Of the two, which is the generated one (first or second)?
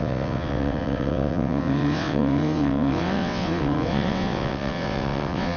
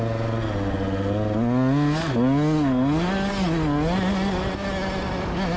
first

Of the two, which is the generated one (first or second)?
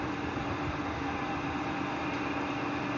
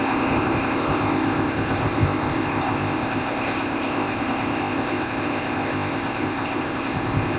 second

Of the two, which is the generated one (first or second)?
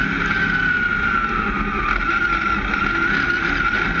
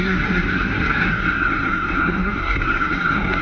second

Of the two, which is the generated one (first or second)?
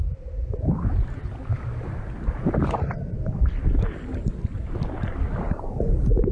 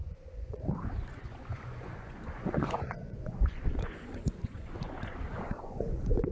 second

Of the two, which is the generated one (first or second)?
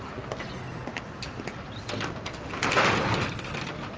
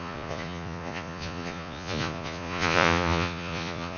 second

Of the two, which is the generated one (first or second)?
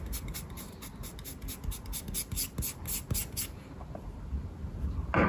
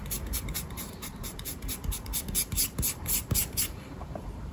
second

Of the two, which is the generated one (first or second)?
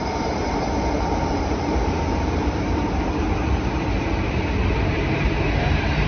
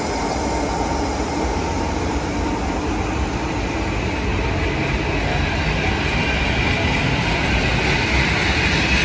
first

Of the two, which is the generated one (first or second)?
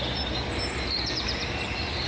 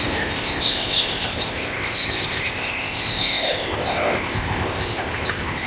second